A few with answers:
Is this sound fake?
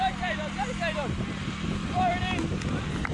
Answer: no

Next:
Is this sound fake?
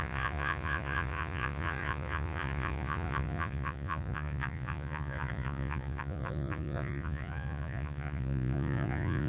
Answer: yes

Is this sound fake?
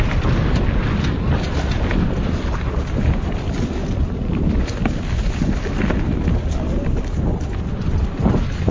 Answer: no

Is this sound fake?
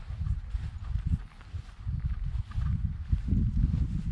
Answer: no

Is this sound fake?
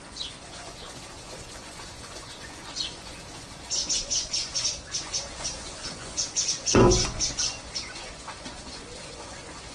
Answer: yes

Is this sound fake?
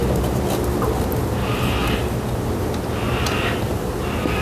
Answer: no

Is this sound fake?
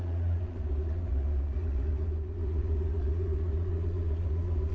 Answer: yes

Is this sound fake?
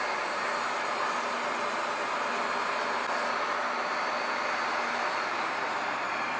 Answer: no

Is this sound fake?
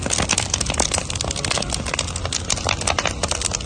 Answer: no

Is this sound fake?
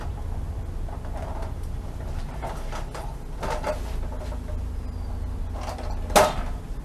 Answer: no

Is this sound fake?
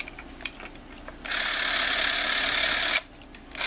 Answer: no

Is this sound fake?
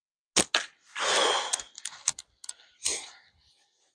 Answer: no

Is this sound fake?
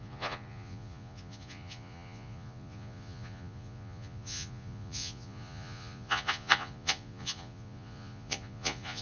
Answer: yes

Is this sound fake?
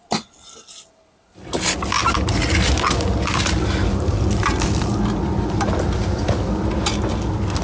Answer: no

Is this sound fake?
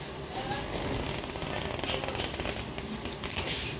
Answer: no